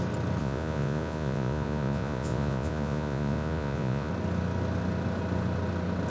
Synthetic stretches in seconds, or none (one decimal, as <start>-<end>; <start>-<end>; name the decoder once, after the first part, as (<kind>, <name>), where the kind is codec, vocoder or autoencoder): 0.4-4.1 (vocoder, Vocos)